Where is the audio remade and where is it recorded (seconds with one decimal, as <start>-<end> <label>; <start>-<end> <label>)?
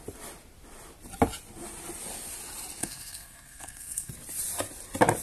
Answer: 0.0-2.8 recorded; 2.8-4.1 remade; 4.1-5.2 recorded